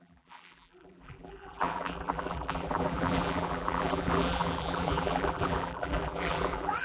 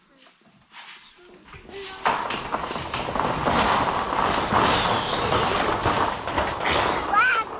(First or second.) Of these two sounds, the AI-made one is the first